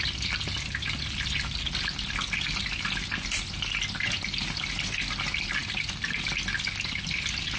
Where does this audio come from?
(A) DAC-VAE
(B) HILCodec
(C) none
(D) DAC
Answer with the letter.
C